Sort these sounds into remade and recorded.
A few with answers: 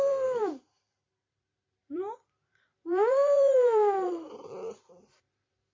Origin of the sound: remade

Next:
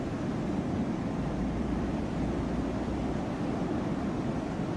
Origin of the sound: remade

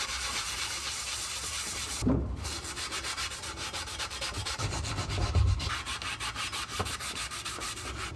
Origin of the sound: remade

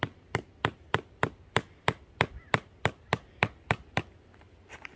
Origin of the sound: recorded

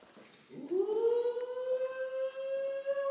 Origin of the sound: recorded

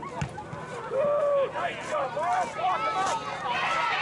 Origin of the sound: recorded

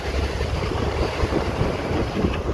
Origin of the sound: remade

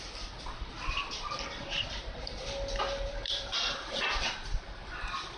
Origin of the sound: remade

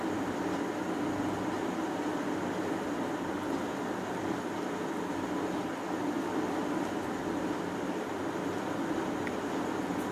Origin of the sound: recorded